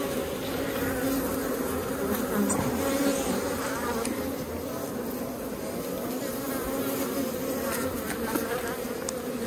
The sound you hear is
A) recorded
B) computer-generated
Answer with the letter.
A